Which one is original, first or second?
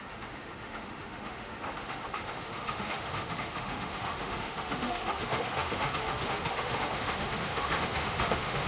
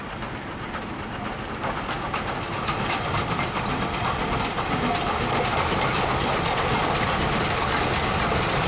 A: second